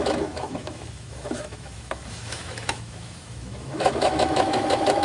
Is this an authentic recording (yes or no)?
no